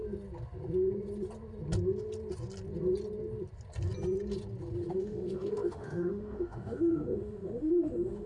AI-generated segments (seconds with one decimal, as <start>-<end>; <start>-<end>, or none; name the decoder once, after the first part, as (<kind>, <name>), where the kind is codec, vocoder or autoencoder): 4.9-8.3 (autoencoder, DAC-VAE)